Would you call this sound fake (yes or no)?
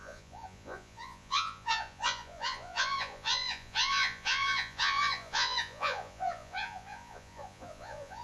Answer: yes